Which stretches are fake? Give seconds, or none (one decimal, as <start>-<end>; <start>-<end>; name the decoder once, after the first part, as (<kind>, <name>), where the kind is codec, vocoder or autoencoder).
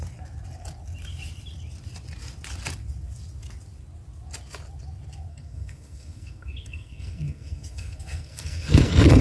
5.3-9.2 (codec, SNAC)